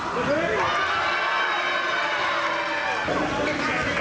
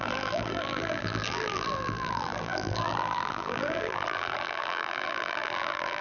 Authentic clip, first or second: first